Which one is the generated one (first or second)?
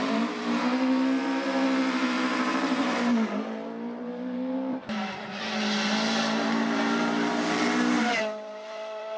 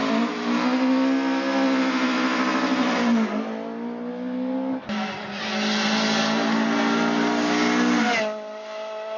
first